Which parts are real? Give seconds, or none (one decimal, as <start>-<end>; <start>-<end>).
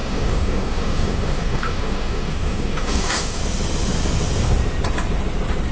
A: 3.4-5.7